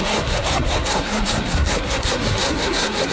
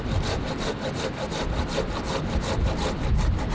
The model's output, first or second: first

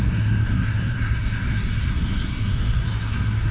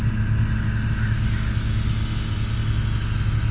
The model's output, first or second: first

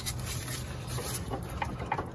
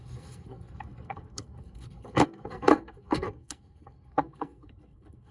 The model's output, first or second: second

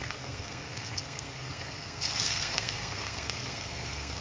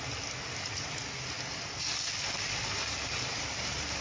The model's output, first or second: first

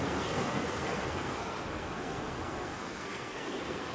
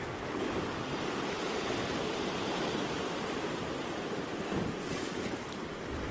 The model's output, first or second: first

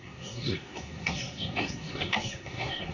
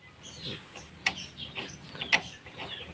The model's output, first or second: first